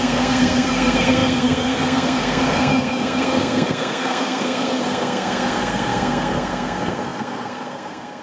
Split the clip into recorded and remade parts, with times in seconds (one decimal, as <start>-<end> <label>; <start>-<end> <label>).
0.0-8.2 remade